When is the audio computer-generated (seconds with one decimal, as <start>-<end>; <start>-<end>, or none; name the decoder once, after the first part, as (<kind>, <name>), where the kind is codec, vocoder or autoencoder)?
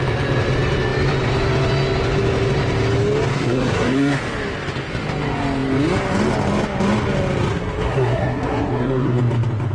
3.3-4.2 (codec, SNAC); 7.5-9.2